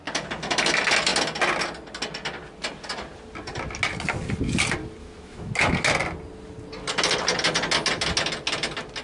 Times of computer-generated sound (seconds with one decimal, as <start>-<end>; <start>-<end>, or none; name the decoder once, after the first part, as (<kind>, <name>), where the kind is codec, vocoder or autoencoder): 5.0-5.5 (autoencoder, DAC-VAE)